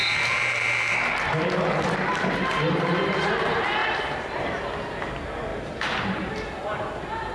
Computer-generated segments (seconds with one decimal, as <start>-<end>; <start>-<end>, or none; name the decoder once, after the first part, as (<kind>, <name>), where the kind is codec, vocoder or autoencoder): 0.0-0.9 (vocoder, BigVGAN v2); 2.1-3.2; 3.8-4.6; 5.5-6.3

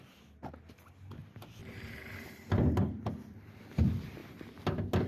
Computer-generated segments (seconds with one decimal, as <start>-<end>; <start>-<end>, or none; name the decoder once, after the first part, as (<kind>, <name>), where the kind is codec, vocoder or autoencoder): 1.6-3.5 (vocoder, BigVGAN v2)